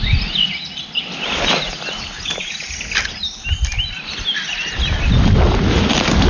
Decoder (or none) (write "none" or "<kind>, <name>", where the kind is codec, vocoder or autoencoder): none